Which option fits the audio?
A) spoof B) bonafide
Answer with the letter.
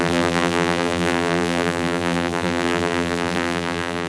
A